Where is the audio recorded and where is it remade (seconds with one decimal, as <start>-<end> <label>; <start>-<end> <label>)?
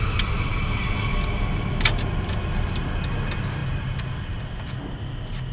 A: 0.0-5.5 recorded